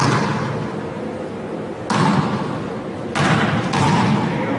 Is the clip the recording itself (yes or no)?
yes